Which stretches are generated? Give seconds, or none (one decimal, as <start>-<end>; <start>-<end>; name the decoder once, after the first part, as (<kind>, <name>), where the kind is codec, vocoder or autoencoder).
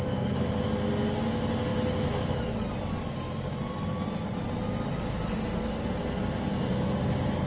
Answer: none